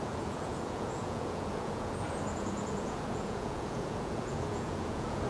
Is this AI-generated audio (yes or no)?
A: yes